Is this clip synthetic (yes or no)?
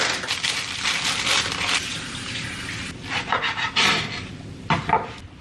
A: yes